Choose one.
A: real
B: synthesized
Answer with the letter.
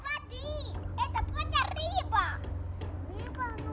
A